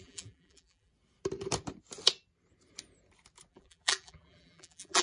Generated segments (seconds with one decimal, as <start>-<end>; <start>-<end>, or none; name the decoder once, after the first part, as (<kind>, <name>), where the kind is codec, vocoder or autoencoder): 0.0-0.9 (vocoder, BigVGAN v2); 3.5-5.0